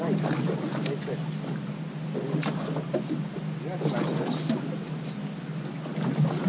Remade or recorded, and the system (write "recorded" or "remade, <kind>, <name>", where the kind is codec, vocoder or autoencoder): recorded